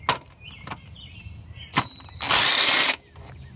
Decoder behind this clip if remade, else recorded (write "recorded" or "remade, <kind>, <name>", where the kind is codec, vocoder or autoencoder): recorded